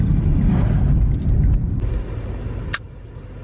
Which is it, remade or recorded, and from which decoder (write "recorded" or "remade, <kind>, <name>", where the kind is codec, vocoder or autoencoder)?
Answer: recorded